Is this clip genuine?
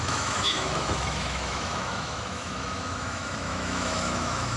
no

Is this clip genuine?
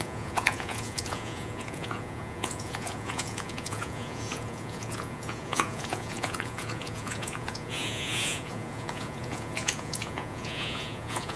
no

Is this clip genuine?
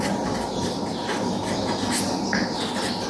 yes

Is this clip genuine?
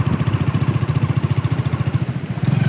yes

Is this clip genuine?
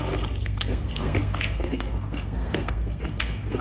no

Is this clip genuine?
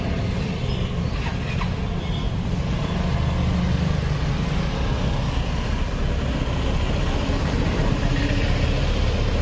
yes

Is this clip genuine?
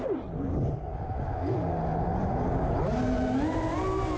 yes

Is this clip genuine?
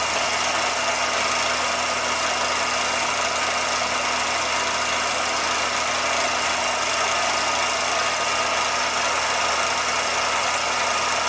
yes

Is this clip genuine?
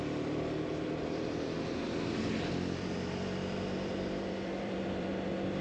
no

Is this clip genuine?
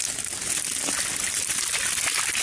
yes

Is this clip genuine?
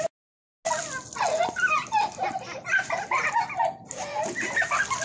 yes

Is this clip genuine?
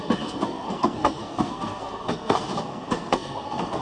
no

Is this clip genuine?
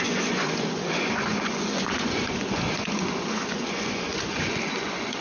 no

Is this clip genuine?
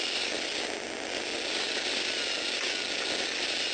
yes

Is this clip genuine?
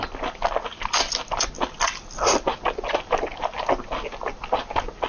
yes